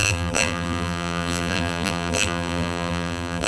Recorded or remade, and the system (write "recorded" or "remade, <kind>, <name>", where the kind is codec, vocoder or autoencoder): remade, vocoder, BigVGAN v2